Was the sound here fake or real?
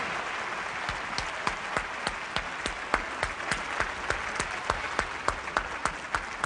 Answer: real